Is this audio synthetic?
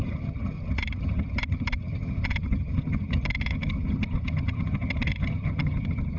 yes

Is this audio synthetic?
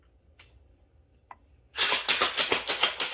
no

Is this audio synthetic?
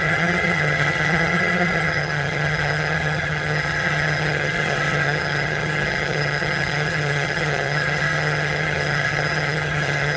yes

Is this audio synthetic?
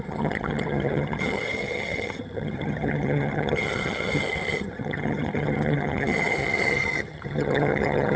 yes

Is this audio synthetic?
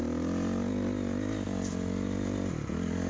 no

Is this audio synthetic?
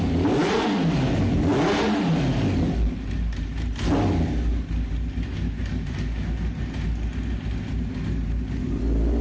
no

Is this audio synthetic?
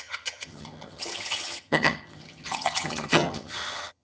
yes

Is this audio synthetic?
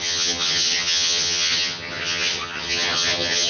yes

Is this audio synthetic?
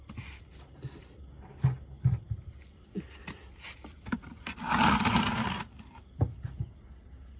no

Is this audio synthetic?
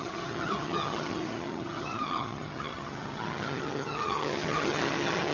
yes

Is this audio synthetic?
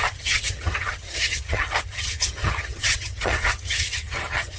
yes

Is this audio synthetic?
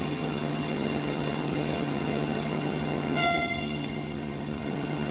yes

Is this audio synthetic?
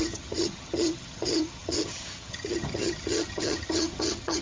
yes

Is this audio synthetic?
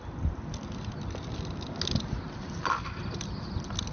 no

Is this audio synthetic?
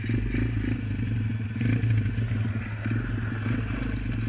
no